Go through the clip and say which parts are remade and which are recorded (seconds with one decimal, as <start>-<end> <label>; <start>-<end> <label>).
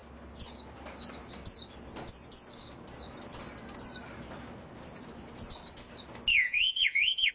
0.0-6.3 recorded; 6.3-7.3 remade